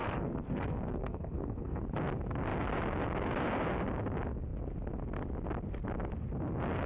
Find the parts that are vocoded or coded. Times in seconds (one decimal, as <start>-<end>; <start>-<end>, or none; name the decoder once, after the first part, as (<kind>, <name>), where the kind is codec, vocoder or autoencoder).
0.0-1.8 (codec, SNAC)